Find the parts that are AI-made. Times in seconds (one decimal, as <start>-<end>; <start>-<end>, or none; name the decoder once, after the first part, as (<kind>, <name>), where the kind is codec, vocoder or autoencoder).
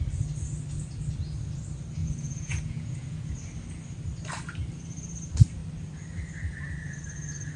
2.0-3.3 (vocoder, Vocos)